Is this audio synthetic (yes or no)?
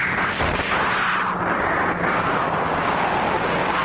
no